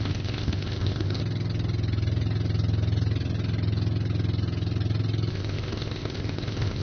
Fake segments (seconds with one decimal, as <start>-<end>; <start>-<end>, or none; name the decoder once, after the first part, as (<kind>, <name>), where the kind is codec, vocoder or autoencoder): 0.0-1.2 (codec, ZipCodec); 5.3-6.8